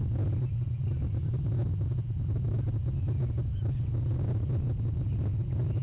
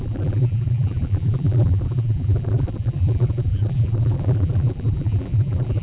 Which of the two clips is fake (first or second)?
second